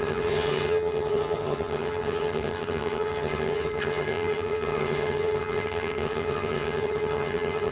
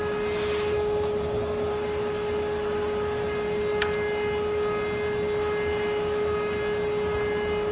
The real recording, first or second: second